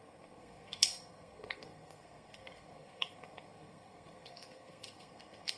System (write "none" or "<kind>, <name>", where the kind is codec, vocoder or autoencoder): codec, SNAC